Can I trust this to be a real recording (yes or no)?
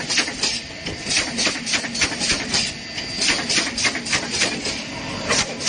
no